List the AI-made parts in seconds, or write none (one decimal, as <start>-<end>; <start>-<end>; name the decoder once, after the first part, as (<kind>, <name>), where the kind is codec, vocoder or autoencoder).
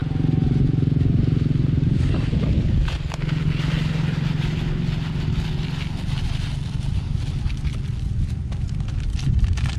none